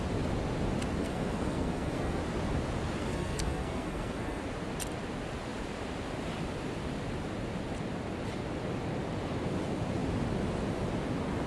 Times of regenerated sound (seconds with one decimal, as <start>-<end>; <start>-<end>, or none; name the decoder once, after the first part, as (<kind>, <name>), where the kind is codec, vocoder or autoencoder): 1.0-2.2 (codec, SNAC); 3.0-4.4

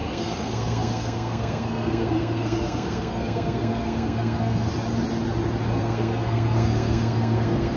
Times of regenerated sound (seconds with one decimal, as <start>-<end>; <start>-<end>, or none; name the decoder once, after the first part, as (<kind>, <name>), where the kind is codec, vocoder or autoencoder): 0.0-4.7 (codec, SNAC); 5.8-7.8

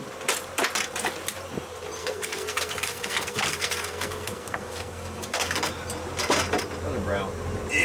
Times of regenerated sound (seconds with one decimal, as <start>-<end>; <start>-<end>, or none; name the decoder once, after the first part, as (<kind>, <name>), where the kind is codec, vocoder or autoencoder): 2.0-5.7 (codec, SNAC)